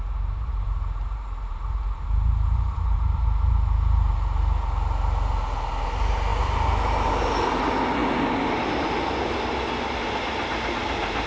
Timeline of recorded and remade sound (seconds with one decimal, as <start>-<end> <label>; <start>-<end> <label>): 0.0-11.3 recorded